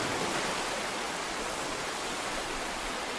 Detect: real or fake real